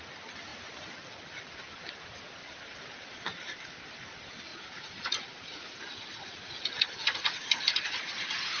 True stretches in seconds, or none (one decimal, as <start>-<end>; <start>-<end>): 0.0-4.5